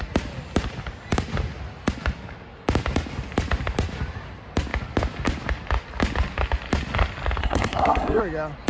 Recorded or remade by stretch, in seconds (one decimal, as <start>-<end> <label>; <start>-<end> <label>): 0.0-7.4 recorded; 7.4-8.2 remade; 8.2-8.7 recorded